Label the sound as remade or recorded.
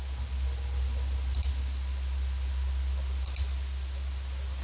recorded